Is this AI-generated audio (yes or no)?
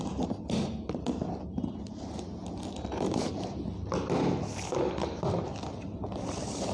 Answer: no